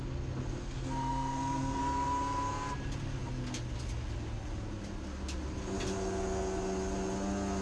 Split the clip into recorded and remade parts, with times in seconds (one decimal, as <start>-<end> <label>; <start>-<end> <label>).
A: 0.0-0.6 recorded; 0.6-1.8 remade; 1.8-7.6 recorded